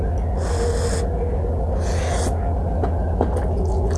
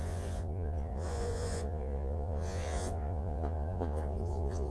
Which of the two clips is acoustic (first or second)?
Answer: first